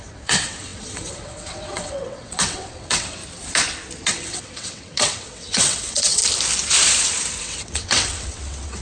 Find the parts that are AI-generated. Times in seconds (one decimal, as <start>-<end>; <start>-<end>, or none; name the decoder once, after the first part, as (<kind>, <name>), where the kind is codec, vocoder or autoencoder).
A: 0.0-3.2 (vocoder, WaveNeXt); 4.1-6.2; 7.4-8.8